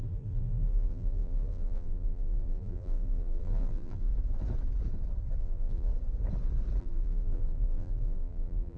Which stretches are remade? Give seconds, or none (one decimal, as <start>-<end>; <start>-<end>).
0.0-4.1; 5.4-5.9; 6.8-8.8